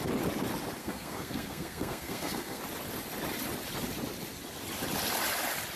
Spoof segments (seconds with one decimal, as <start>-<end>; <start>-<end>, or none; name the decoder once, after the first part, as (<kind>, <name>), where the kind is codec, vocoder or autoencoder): 0.8-2.6 (codec, SNAC)